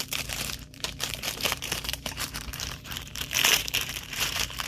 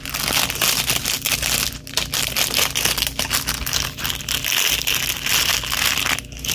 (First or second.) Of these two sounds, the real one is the second